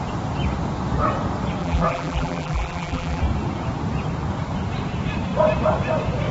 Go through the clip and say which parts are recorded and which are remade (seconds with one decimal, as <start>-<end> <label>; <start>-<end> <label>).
0.0-1.6 recorded; 1.6-3.2 remade; 3.2-6.3 recorded